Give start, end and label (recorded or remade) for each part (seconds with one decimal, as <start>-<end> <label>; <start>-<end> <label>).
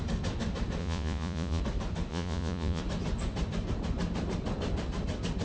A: 0.0-0.8 recorded; 0.8-1.6 remade; 1.6-2.1 recorded; 2.1-2.8 remade; 2.8-5.4 recorded